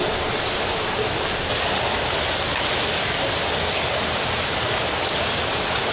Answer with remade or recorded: recorded